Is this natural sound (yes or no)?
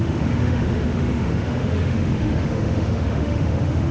no